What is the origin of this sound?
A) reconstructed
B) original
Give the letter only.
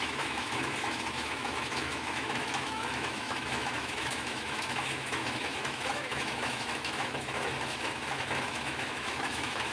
A